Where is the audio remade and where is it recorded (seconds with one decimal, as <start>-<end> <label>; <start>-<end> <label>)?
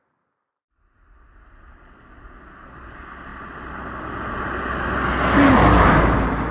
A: 0.0-6.5 recorded